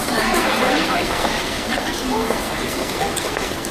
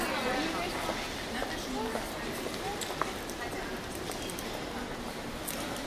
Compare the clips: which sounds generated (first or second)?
first